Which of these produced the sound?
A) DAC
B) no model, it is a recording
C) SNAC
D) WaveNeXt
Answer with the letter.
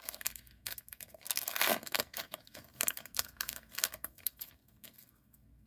C